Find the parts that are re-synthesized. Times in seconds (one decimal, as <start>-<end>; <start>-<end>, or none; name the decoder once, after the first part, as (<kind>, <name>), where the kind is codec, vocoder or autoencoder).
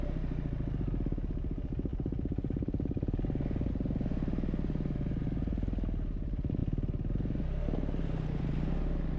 none